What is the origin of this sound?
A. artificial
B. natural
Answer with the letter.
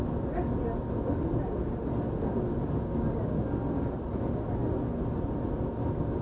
B